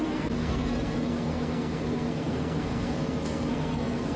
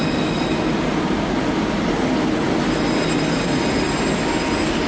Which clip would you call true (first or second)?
second